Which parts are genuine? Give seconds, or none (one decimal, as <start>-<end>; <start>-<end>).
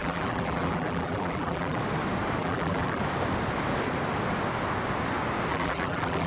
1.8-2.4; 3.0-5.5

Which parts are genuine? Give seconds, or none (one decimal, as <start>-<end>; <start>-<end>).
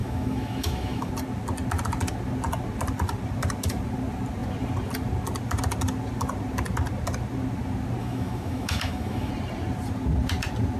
1.1-8.0; 9.3-10.8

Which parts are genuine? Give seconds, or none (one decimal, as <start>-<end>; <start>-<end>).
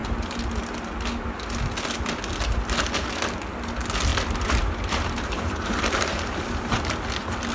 0.0-4.1; 6.9-7.5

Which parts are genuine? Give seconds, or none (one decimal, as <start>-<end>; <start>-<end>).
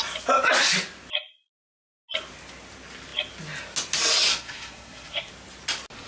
0.0-4.3; 5.3-6.1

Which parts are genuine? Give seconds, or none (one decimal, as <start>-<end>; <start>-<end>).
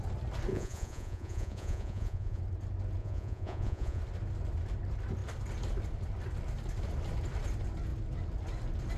0.0-0.5; 2.4-3.0; 4.0-9.0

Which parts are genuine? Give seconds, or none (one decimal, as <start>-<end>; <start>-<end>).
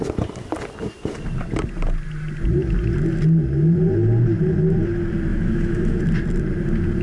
0.0-5.3; 6.0-7.0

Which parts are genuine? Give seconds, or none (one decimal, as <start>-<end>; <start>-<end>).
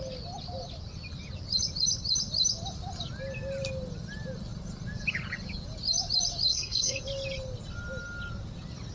0.0-6.5; 7.0-8.9